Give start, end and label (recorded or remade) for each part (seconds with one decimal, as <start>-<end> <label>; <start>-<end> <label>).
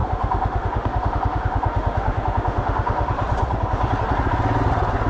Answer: 0.0-3.1 remade; 3.1-5.1 recorded